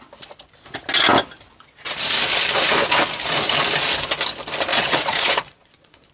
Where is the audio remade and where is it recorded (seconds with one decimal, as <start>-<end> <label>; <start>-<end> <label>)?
0.0-4.7 recorded; 4.7-6.1 remade